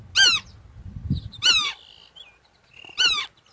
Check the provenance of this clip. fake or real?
real